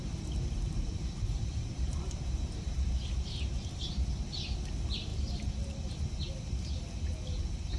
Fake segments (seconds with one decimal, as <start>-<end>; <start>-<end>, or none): 0.0-3.5; 5.1-5.9